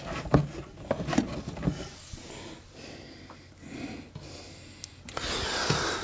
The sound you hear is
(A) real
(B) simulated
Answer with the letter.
A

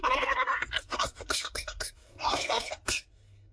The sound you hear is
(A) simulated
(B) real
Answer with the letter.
A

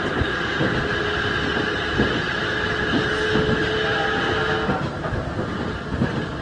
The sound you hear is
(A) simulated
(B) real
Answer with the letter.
B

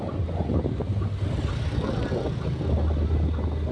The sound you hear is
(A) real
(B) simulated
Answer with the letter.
A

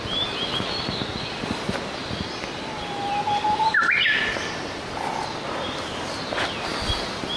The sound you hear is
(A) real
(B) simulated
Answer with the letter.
A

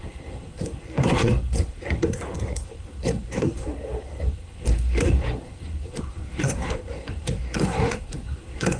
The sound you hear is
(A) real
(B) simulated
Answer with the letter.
B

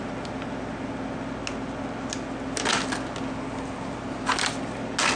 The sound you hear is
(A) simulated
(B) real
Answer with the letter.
B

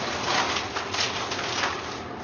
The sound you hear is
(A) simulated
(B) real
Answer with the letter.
B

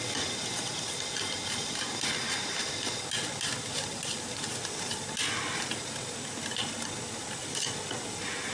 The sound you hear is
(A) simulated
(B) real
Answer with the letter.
B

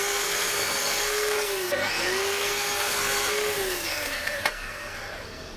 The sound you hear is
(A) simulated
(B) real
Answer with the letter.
A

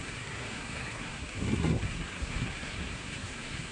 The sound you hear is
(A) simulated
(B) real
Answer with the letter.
A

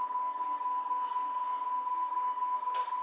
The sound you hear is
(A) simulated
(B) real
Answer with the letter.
A